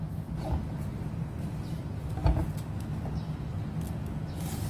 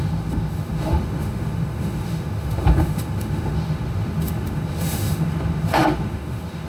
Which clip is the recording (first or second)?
first